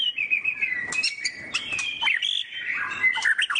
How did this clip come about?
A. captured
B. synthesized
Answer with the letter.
B